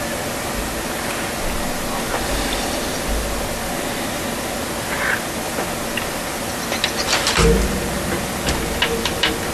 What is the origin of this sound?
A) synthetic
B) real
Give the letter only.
B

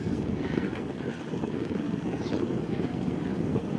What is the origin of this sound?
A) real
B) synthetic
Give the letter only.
B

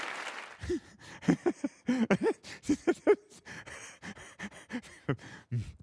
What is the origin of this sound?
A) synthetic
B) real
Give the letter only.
B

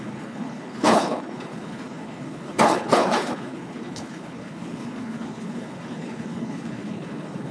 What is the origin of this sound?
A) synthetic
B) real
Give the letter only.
A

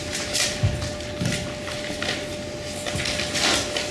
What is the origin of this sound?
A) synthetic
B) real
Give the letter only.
B